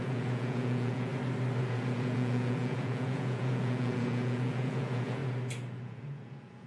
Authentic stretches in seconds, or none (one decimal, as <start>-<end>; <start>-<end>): 1.1-1.6; 5.2-5.8